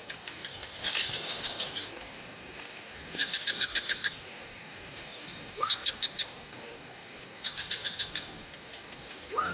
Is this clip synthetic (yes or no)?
yes